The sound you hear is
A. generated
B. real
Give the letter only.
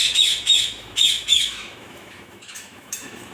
A